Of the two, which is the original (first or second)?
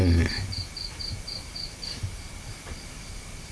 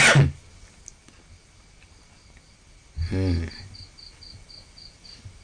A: second